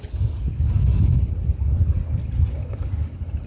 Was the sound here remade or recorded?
recorded